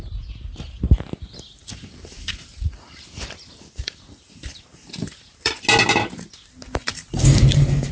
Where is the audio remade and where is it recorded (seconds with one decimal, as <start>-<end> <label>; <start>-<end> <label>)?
0.0-1.6 recorded; 1.6-5.5 remade; 5.5-6.8 recorded; 6.8-7.9 remade